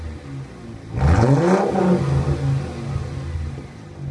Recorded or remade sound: recorded